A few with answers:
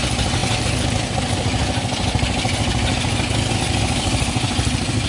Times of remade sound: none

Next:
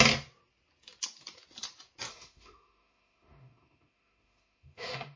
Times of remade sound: 2.1-5.2 (autoencoder, DAC-VAE)

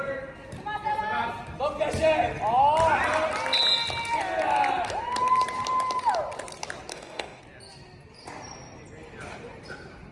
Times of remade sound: 6.9-7.4 (codec, DAC)